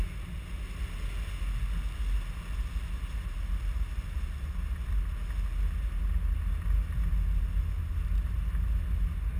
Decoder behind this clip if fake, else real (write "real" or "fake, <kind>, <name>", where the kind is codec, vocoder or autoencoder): real